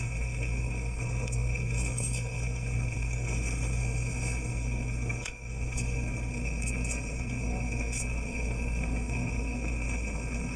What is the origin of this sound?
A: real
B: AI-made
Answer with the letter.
B